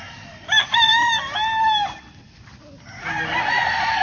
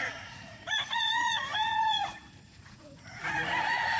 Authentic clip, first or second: first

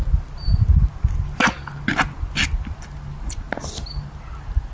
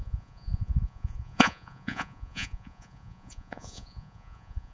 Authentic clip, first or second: first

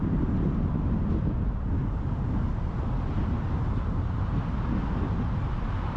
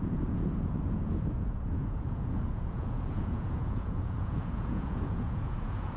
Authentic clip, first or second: first